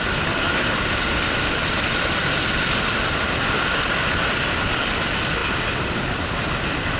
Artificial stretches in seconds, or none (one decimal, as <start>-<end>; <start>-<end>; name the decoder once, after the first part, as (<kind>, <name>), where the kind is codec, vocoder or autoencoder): none